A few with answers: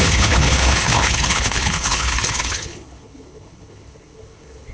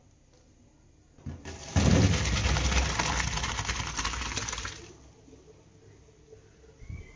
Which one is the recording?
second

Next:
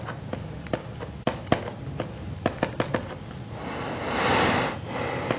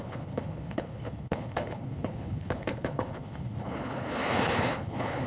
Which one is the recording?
first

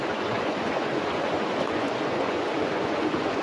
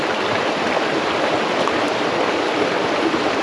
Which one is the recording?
second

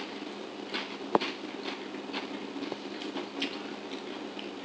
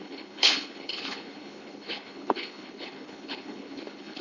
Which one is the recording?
first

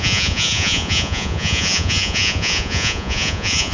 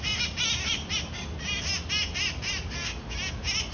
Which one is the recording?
second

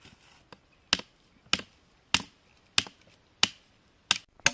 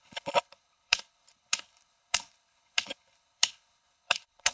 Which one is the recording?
first